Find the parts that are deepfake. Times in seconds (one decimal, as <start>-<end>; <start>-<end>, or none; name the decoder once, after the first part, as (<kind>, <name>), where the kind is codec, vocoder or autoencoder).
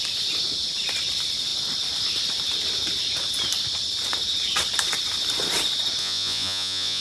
6.0-7.0 (vocoder, Vocos)